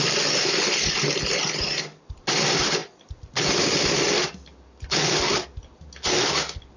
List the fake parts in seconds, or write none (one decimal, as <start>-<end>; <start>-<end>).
none